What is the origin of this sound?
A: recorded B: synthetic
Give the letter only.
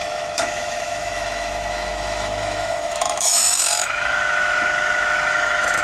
B